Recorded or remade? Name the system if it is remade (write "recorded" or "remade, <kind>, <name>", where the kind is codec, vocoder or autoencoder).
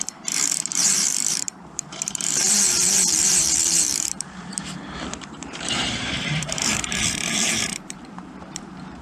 remade, vocoder, BigVGAN v2